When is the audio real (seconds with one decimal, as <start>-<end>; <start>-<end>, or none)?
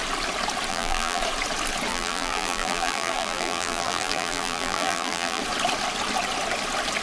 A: 0.0-0.7; 1.2-1.9; 5.4-7.0